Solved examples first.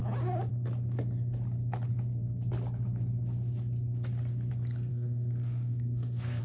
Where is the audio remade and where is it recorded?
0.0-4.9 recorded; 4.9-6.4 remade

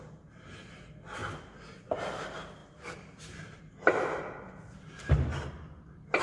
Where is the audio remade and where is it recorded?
0.0-2.6 recorded; 2.6-3.6 remade; 3.6-6.2 recorded

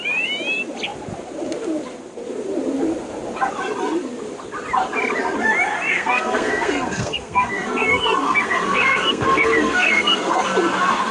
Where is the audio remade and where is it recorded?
0.0-5.9 recorded; 5.9-10.4 remade; 10.4-11.1 recorded

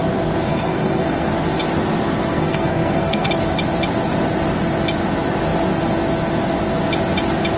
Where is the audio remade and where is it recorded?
0.0-0.5 recorded; 0.5-1.3 remade; 1.3-2.3 recorded; 2.3-3.3 remade; 3.3-7.6 recorded

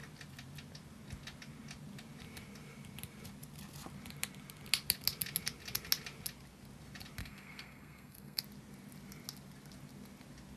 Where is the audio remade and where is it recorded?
0.0-7.2 recorded; 7.2-8.4 remade; 8.4-10.6 recorded